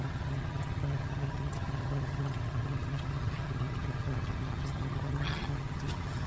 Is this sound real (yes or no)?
no